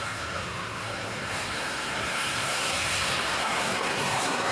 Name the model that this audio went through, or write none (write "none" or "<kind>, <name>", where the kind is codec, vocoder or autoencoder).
codec, SNAC